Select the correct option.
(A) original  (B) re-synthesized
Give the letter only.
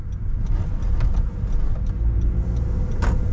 A